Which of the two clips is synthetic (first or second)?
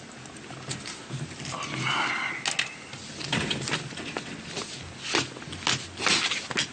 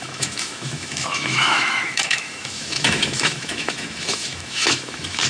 second